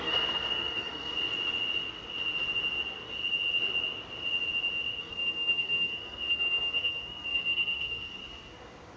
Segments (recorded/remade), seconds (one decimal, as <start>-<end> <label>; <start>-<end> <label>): 0.0-1.1 remade; 1.1-5.0 recorded; 5.0-8.2 remade; 8.2-9.0 recorded